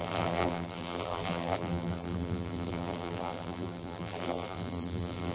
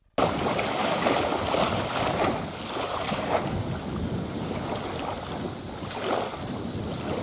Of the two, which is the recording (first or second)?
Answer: second